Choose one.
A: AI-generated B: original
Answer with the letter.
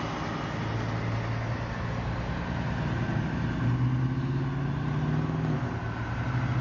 B